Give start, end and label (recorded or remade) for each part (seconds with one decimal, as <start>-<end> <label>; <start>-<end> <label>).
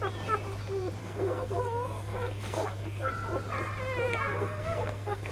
0.0-1.0 recorded; 1.0-3.1 remade; 3.1-4.3 recorded; 4.3-5.3 remade